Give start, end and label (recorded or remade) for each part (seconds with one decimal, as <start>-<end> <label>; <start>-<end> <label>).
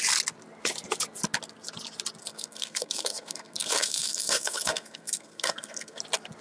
0.0-2.2 recorded; 2.2-6.0 remade; 6.0-6.4 recorded